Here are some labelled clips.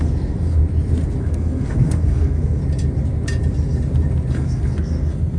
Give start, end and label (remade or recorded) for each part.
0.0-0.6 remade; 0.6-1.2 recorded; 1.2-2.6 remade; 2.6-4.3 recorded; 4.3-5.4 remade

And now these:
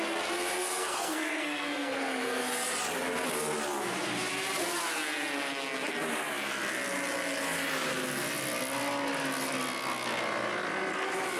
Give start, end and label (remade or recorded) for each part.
0.0-0.6 recorded; 0.6-2.4 remade; 2.4-11.4 recorded

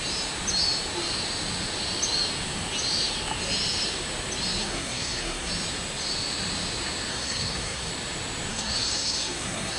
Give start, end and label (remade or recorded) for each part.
0.0-4.6 recorded; 4.6-5.5 remade; 5.5-7.1 recorded; 7.1-7.9 remade; 7.9-8.5 recorded; 8.5-9.8 remade

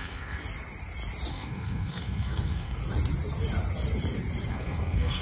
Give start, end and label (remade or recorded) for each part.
0.0-0.4 remade; 0.4-1.3 recorded; 1.3-2.8 remade; 2.8-4.5 recorded; 4.5-5.2 remade

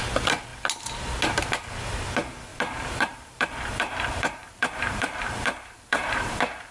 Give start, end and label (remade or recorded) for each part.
0.0-2.5 recorded; 2.5-6.7 remade

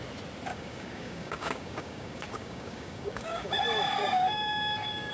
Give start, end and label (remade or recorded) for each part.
0.0-0.5 recorded; 0.5-3.6 remade; 3.6-4.0 recorded; 4.0-5.1 remade

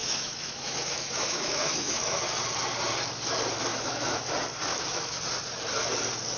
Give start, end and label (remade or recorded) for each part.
0.0-2.2 remade; 2.2-3.7 recorded; 3.7-4.3 remade; 4.3-4.7 recorded; 4.7-5.2 remade; 5.2-6.4 recorded

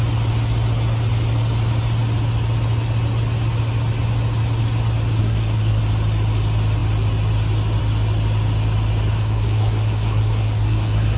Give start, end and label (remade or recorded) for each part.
0.0-5.2 recorded; 5.2-5.8 remade; 5.8-9.2 recorded; 9.2-11.2 remade